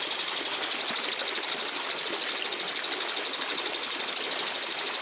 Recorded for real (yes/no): yes